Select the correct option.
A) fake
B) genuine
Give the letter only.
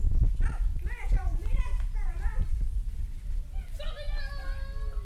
B